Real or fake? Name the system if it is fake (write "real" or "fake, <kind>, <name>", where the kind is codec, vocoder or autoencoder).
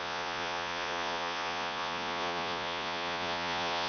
fake, vocoder, Vocos